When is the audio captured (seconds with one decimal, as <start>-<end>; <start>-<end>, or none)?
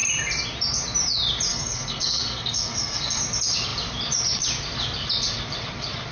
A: 0.0-1.5; 3.2-6.1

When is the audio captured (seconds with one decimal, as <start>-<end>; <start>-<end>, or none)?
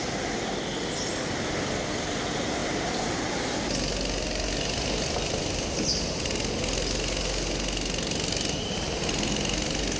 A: 0.0-2.6; 3.2-10.0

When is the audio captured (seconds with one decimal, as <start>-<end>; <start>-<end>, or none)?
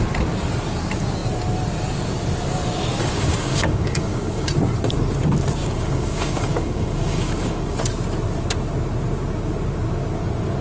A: 0.0-3.0; 4.5-5.6; 7.8-10.6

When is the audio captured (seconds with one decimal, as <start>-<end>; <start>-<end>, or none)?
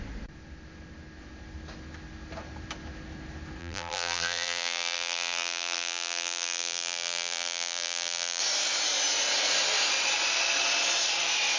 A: 0.0-3.6; 8.4-11.6